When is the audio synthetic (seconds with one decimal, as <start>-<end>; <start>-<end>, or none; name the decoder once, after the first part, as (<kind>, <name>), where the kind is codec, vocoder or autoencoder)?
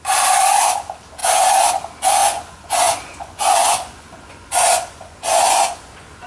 2.2-6.3 (vocoder, Vocos)